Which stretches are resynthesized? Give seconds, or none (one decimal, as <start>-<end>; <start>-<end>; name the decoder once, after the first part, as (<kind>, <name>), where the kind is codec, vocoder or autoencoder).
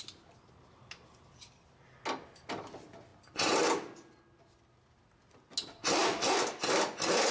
none